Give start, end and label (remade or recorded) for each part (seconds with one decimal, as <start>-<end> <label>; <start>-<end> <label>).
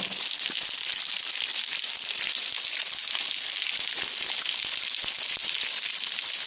0.0-6.5 recorded